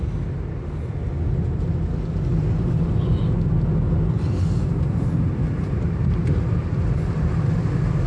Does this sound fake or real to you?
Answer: real